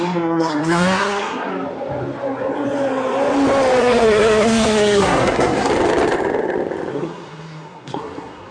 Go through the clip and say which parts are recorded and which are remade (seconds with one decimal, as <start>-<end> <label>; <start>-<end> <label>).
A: 0.0-1.5 remade; 1.5-3.8 recorded; 3.8-5.7 remade; 5.7-6.9 recorded; 6.9-8.5 remade